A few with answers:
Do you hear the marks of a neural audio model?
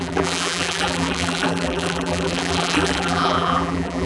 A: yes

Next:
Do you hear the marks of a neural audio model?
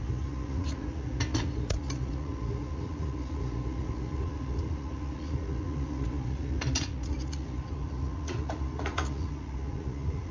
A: yes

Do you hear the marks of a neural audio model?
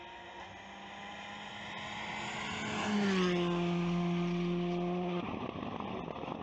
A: no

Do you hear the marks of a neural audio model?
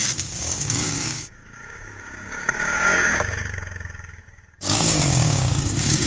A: yes